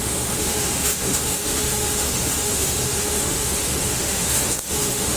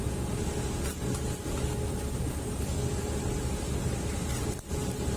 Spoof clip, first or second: first